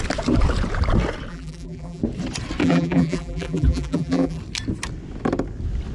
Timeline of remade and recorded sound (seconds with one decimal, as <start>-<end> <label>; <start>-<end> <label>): 0.0-1.3 recorded; 1.3-2.0 remade; 2.0-2.6 recorded; 2.6-4.4 remade; 4.4-5.9 recorded